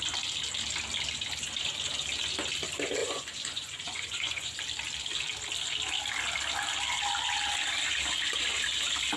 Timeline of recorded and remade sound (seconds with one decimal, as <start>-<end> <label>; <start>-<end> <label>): 0.0-3.0 recorded; 3.0-4.6 remade; 4.6-9.2 recorded